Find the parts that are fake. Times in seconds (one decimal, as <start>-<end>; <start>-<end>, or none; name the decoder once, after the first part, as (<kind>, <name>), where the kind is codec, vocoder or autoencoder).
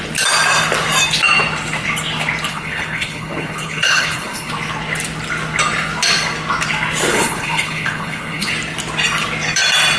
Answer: 2.5-4.5 (codec, HILCodec); 7.1-8.5